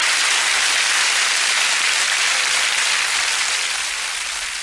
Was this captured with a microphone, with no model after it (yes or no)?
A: yes